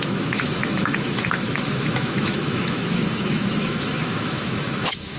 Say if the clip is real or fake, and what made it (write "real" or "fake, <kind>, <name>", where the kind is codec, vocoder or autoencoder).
fake, autoencoder, DAC-VAE